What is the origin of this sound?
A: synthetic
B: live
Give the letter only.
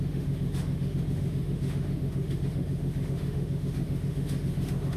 A